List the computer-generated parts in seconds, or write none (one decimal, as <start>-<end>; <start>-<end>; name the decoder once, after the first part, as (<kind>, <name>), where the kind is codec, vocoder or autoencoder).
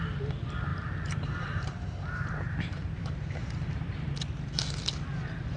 0.7-4.1 (vocoder, BigVGAN v2)